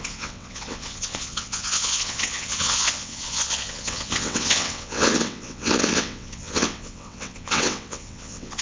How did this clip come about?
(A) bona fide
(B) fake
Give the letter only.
B